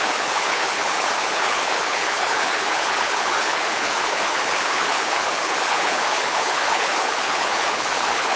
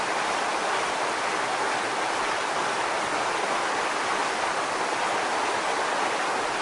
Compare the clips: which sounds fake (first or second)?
first